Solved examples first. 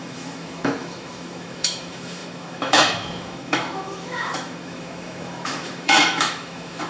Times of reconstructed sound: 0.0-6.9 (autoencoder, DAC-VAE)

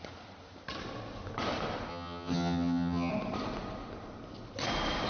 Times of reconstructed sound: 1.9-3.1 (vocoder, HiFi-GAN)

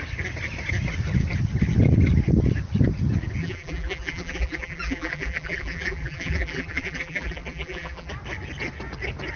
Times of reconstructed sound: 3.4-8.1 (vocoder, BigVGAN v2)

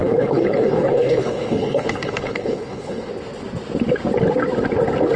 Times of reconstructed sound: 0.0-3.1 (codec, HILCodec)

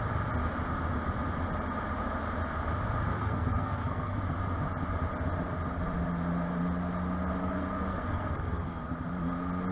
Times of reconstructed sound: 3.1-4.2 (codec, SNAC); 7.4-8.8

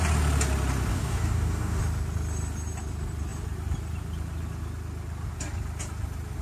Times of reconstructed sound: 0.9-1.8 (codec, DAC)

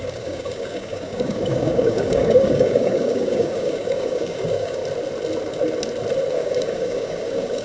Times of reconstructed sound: 0.0-4.8 (codec, DAC); 6.3-7.6

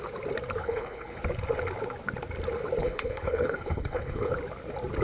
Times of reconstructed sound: 0.6-1.2 (codec, HILCodec); 2.8-4.3